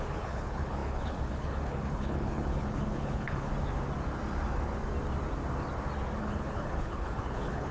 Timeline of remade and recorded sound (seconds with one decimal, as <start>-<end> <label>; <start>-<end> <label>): 0.0-3.5 remade; 3.5-6.2 recorded; 6.2-7.7 remade